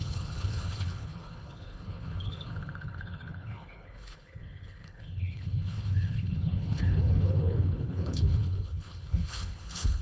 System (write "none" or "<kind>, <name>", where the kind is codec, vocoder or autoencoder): codec, HILCodec